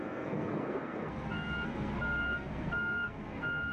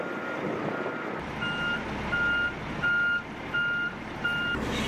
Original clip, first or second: second